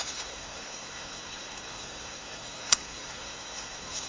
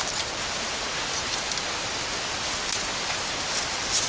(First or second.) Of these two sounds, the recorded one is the second